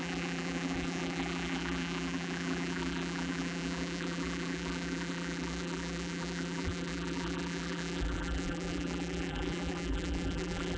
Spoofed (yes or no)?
yes